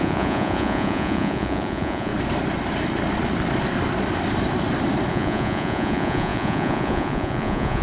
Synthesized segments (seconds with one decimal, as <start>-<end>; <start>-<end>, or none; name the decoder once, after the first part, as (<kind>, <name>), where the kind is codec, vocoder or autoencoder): 0.0-2.1 (vocoder, Vocos); 5.1-7.8